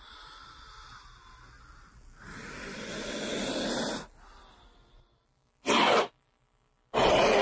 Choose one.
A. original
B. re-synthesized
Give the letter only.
A